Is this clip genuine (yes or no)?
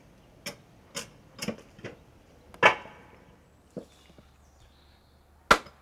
yes